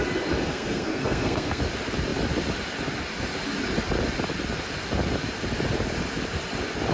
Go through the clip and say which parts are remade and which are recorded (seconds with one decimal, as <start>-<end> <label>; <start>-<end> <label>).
0.0-0.4 recorded; 0.4-1.6 remade; 1.6-6.9 recorded